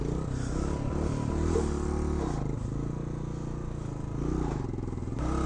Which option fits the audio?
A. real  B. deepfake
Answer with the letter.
A